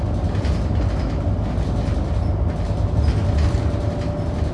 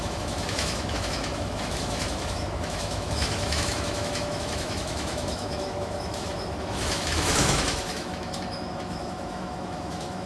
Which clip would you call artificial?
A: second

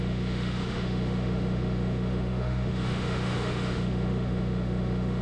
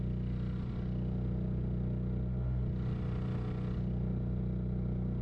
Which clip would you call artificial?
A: first